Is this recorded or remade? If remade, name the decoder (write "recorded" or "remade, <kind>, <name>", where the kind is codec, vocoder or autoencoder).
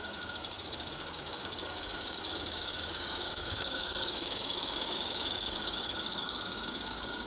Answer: remade, codec, DAC